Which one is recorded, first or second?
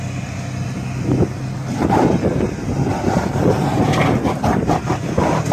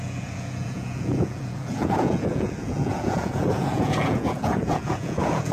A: first